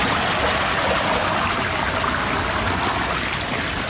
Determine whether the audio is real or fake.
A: real